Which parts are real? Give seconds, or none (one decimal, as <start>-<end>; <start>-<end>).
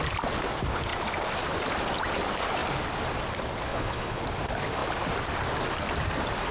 0.0-3.7; 4.2-6.5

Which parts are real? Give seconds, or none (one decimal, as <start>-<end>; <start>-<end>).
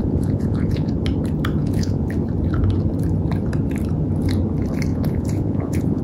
0.9-1.6; 2.1-4.9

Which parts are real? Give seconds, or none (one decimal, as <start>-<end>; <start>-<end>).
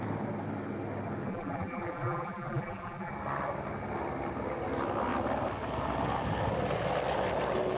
0.0-1.3; 3.1-7.8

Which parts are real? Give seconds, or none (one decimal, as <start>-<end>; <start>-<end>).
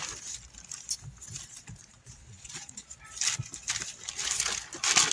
0.0-1.8; 3.0-5.1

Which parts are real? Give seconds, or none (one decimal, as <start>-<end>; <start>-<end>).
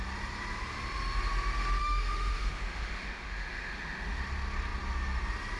0.0-1.8; 4.2-5.6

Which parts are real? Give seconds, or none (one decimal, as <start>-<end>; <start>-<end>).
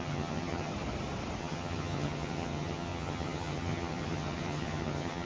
0.7-1.4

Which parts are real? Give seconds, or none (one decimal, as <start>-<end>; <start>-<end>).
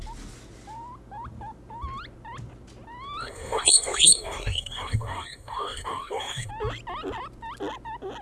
0.0-3.2; 6.5-8.2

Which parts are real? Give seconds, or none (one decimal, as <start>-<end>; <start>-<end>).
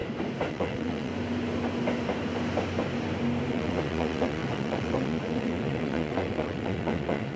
0.0-0.5; 1.1-3.5